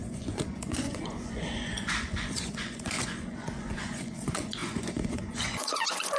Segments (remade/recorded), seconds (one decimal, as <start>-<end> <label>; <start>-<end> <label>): 0.0-6.2 remade